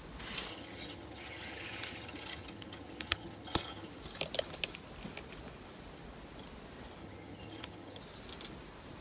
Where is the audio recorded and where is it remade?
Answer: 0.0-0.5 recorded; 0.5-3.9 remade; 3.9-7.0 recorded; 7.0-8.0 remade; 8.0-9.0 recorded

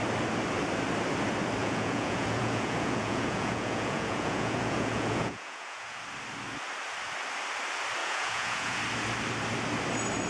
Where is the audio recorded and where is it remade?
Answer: 0.0-1.6 recorded; 1.6-6.0 remade; 6.0-8.0 recorded; 8.0-8.8 remade; 8.8-10.3 recorded

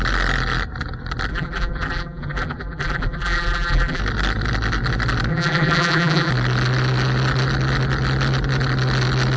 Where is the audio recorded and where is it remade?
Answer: 0.0-1.3 recorded; 1.3-4.0 remade; 4.0-5.3 recorded; 5.3-6.3 remade; 6.3-9.4 recorded

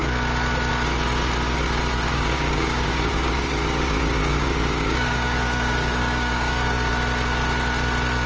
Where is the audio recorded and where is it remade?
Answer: 0.0-2.1 recorded; 2.1-6.9 remade; 6.9-8.3 recorded

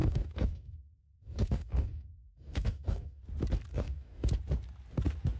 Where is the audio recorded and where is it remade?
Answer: 0.0-3.2 remade; 3.2-3.7 recorded; 3.7-4.3 remade; 4.3-5.4 recorded

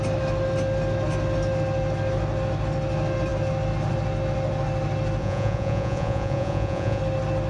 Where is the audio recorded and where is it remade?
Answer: 0.0-5.2 recorded; 5.2-7.0 remade; 7.0-7.5 recorded

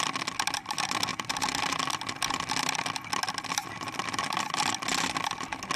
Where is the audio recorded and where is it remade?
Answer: 0.0-5.8 recorded

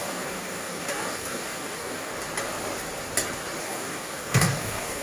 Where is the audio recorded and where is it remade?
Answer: 0.0-2.1 remade; 2.1-3.6 recorded; 3.6-5.0 remade